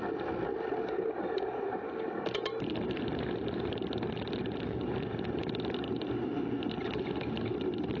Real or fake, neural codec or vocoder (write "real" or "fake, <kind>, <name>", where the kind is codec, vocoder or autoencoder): real